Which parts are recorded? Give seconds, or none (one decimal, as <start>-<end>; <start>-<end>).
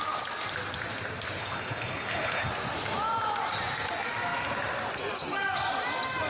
0.0-1.4; 2.5-6.3